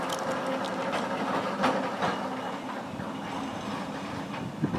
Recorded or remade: recorded